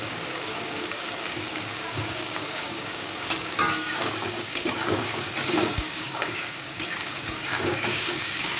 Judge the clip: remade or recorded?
remade